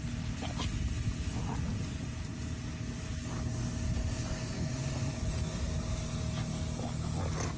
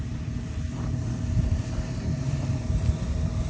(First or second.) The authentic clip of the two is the first